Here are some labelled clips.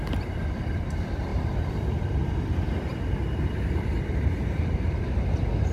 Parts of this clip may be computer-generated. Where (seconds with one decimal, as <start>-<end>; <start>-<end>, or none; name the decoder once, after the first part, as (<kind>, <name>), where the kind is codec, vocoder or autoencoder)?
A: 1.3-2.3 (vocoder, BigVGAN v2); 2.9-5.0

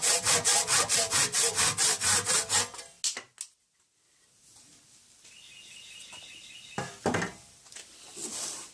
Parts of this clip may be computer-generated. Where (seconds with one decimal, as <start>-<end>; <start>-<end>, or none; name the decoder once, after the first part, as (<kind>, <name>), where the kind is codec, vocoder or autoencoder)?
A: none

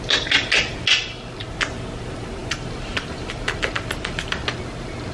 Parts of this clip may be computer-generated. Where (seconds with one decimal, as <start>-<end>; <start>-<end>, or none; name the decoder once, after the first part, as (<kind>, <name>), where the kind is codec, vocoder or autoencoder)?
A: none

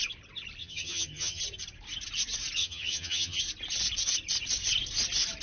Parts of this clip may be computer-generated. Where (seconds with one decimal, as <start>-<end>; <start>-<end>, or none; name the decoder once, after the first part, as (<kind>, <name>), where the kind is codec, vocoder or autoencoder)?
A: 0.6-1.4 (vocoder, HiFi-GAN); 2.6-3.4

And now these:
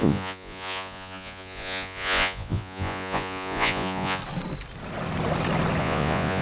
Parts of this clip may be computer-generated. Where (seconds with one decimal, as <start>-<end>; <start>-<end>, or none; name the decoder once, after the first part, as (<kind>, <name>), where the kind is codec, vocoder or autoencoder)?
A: 0.0-4.2 (vocoder, Vocos); 5.8-6.4

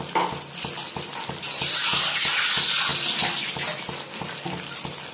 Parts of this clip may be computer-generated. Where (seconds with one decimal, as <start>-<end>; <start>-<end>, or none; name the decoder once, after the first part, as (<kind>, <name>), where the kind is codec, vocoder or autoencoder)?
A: none